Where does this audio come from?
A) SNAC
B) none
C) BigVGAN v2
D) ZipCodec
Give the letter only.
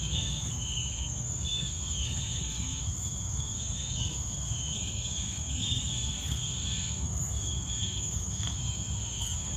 A